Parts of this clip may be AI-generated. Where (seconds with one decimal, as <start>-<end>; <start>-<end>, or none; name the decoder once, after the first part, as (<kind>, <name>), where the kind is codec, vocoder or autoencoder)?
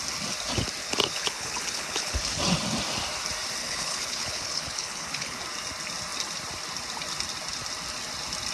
0.8-2.4 (codec, HILCodec); 3.6-5.4